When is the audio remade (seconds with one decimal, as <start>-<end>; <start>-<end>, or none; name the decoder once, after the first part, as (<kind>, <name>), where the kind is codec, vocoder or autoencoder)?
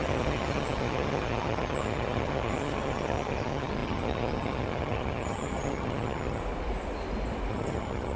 0.0-6.4 (vocoder, HiFi-GAN); 7.5-8.2